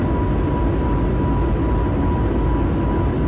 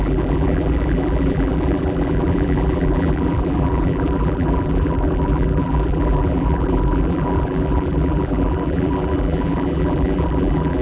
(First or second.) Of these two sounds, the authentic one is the first